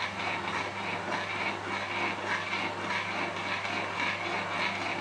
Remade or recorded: recorded